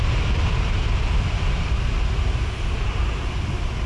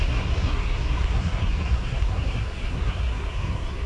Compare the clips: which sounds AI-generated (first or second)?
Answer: second